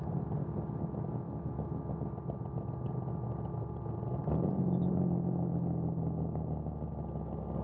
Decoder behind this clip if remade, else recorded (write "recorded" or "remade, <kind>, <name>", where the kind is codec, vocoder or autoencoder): recorded